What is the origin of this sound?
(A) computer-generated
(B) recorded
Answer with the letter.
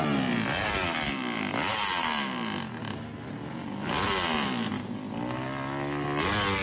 B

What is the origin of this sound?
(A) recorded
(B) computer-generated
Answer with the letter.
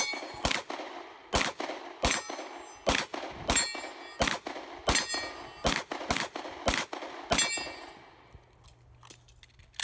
A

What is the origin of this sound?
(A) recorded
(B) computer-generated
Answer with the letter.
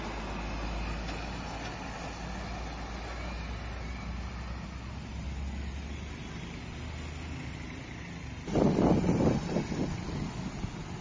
A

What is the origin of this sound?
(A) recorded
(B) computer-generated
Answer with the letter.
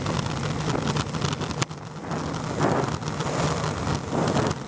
A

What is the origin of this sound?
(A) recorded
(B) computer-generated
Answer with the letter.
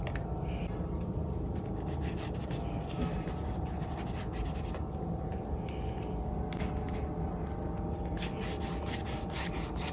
A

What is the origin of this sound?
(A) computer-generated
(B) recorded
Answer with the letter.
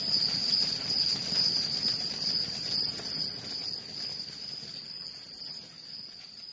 B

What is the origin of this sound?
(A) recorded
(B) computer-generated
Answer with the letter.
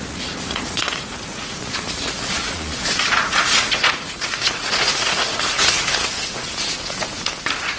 B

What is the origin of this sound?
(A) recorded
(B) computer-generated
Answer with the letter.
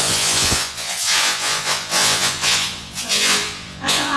B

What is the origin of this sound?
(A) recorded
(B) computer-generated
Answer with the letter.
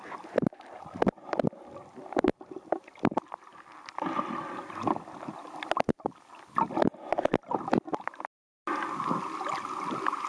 A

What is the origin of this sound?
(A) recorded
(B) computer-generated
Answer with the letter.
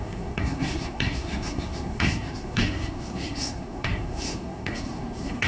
B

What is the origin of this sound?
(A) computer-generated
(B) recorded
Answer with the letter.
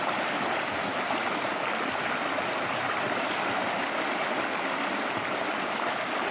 B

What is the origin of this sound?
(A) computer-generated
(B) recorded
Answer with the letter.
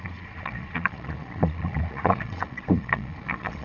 A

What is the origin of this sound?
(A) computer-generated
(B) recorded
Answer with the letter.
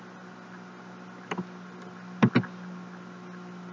B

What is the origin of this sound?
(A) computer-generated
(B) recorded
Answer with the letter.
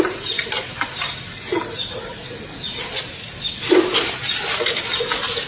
B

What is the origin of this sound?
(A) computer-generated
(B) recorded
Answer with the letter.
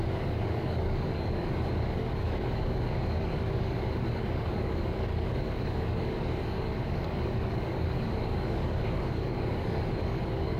A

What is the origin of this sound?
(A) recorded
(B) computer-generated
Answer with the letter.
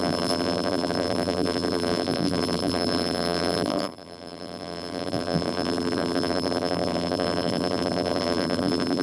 B